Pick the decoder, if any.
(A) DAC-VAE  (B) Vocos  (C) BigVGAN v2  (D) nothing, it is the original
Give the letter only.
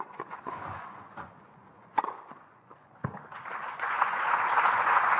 B